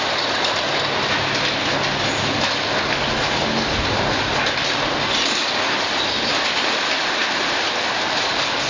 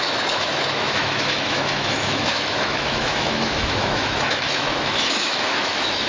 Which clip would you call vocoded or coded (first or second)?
second